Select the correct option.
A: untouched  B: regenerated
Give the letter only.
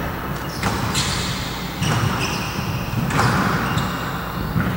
A